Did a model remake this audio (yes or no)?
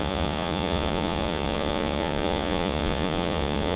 yes